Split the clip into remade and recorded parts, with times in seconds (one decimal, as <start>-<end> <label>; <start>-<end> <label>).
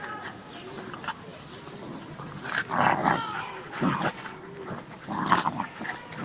0.0-6.2 recorded